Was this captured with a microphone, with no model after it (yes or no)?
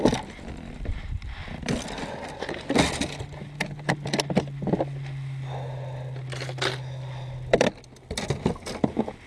yes